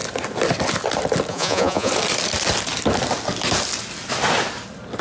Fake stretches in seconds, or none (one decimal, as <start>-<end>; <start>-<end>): 1.3-1.9